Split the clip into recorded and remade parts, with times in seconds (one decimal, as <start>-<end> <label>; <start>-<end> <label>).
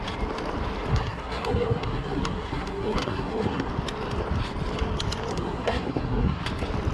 0.0-0.9 recorded; 0.9-3.7 remade; 3.7-5.3 recorded; 5.3-6.4 remade; 6.4-6.9 recorded